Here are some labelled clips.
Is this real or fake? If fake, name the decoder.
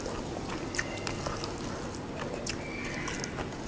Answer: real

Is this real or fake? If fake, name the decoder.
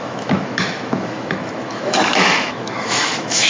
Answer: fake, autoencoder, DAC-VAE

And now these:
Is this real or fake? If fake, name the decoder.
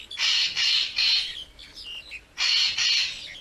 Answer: real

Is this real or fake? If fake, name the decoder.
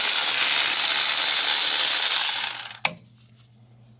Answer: real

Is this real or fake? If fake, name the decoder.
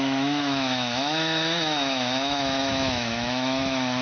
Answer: fake, autoencoder, DAC-VAE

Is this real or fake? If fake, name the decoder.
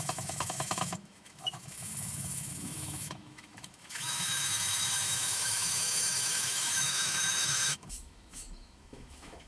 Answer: fake, autoencoder, DAC-VAE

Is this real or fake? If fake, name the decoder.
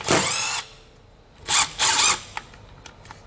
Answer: real